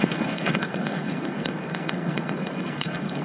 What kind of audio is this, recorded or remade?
remade